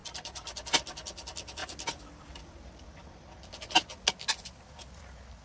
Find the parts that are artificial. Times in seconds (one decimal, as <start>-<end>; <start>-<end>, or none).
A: 0.0-0.6; 1.6-3.3